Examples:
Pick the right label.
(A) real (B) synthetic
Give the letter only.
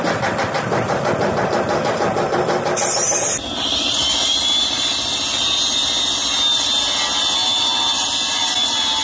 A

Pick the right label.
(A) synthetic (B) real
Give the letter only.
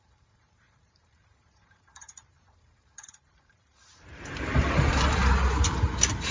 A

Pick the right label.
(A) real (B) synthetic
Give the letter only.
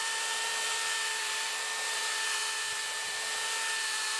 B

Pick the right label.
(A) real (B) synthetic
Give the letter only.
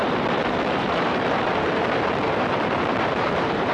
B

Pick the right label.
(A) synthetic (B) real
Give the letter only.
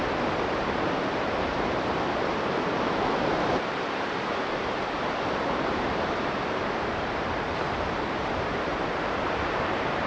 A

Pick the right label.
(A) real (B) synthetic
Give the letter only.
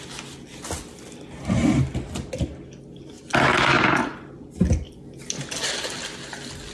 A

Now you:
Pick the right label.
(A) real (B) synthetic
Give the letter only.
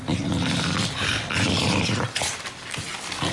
B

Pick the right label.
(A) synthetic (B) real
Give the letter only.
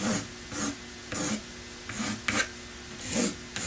B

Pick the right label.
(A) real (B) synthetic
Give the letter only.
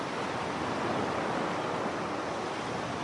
A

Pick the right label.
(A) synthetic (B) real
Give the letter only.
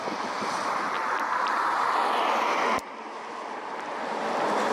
A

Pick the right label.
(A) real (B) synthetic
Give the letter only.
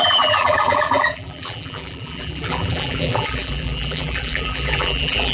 B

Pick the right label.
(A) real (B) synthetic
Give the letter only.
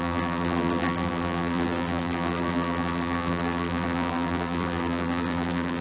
B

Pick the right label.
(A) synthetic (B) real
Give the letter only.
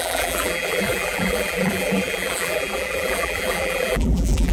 A